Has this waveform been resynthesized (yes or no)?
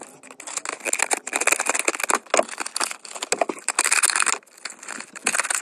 no